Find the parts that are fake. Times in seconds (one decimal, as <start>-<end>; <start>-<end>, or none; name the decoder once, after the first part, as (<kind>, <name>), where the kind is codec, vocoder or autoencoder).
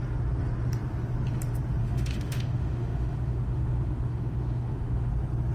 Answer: 1.8-5.1 (autoencoder, DAC-VAE)